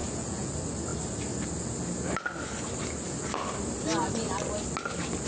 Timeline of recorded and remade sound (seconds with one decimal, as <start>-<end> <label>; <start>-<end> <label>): 0.0-0.5 remade; 0.5-5.3 recorded